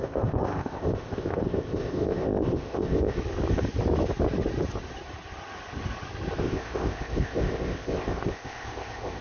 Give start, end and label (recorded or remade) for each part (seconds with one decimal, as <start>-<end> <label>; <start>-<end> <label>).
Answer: 0.0-3.2 remade; 3.2-6.4 recorded; 6.4-9.2 remade